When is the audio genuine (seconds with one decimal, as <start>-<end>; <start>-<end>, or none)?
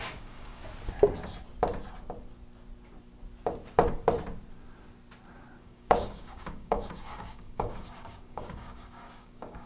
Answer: 0.6-5.6